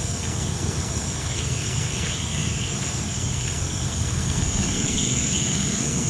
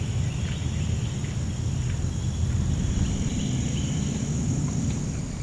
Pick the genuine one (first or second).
second